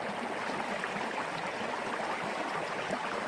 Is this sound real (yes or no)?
yes